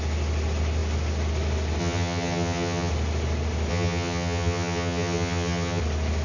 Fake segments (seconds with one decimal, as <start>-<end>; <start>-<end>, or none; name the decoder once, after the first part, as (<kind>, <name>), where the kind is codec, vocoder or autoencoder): 1.8-2.9 (vocoder, HiFi-GAN); 3.7-5.8